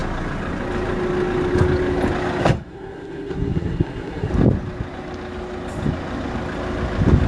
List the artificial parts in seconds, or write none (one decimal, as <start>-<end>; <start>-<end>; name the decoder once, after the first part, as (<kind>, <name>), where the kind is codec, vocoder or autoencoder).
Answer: 2.4-4.3 (codec, SNAC)